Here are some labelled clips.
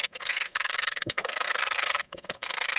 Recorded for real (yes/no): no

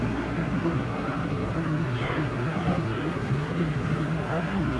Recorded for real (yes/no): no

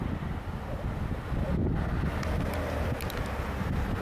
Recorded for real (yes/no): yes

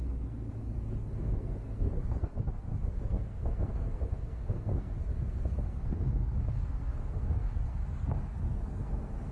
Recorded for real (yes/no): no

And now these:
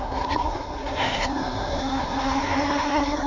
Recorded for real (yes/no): no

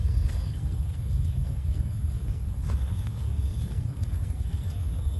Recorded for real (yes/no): no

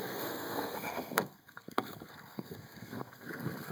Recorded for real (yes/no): no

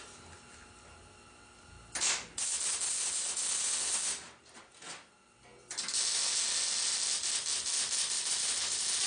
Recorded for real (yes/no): yes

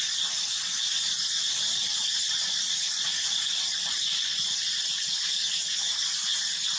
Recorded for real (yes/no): yes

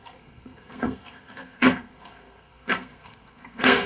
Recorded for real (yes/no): no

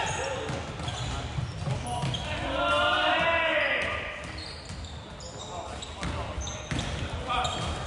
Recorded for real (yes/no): yes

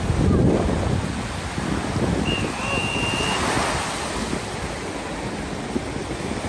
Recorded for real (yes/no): yes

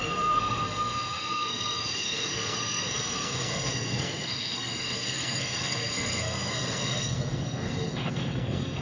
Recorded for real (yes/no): no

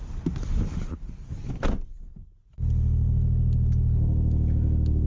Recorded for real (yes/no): yes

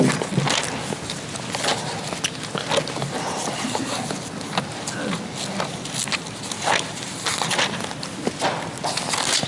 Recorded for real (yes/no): yes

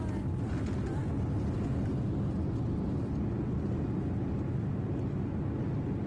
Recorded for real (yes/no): yes